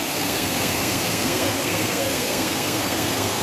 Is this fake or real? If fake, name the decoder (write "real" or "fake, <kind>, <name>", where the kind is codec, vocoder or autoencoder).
fake, codec, SNAC